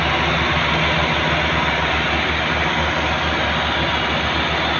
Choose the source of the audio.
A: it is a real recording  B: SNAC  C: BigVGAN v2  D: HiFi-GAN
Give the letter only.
A